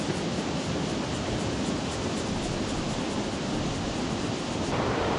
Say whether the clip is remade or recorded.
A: recorded